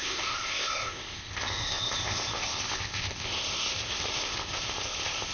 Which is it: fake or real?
fake